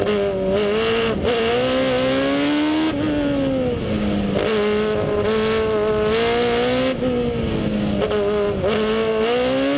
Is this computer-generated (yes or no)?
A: no